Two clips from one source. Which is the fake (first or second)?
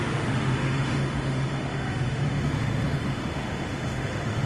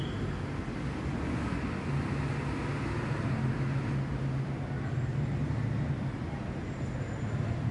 first